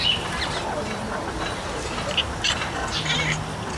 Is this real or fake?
real